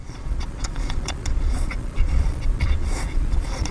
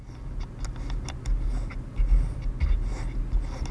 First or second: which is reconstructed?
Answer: first